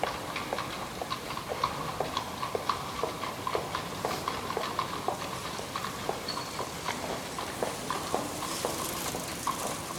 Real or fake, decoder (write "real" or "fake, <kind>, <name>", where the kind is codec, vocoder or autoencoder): fake, vocoder, BigVGAN v2